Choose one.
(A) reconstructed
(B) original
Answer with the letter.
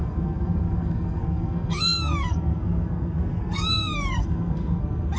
A